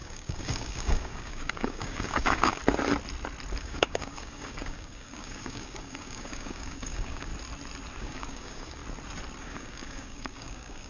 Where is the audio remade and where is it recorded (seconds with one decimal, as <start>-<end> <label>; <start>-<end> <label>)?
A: 0.0-2.6 remade; 2.6-3.6 recorded; 3.6-7.3 remade; 7.3-8.0 recorded; 8.0-8.8 remade; 8.8-9.4 recorded; 9.4-10.9 remade